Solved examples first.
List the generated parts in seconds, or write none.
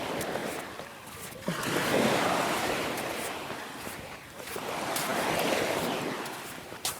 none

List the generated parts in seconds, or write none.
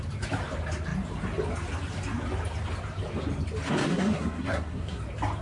3.8-5.0 (codec, SNAC)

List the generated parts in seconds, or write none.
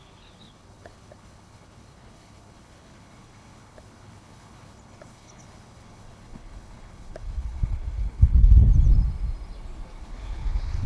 0.0-8.7 (codec, HILCodec); 10.0-10.9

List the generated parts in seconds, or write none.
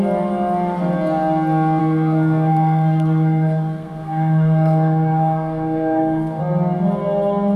1.8-6.4 (codec, SNAC)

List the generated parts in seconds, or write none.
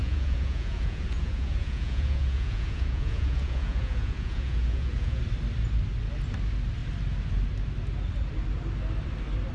0.0-5.2 (vocoder, Vocos)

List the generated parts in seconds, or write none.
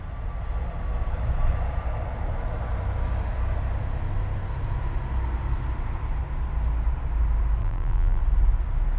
7.6-8.2 (vocoder, BigVGAN v2)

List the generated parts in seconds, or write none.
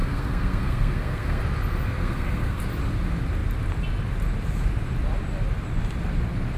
0.0-1.4 (codec, SNAC); 2.0-2.6